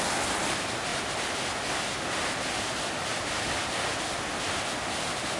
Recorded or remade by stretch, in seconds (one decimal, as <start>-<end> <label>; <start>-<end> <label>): 0.0-5.4 recorded